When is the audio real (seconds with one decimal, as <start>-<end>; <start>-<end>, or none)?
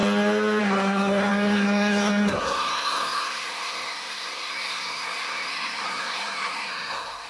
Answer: 0.0-0.6